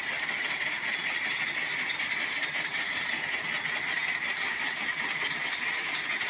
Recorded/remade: recorded